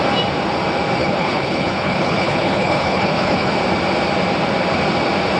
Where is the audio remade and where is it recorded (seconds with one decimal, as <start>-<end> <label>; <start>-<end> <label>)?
0.0-1.0 recorded; 1.0-3.5 remade; 3.5-5.4 recorded